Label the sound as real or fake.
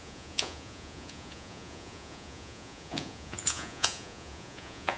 fake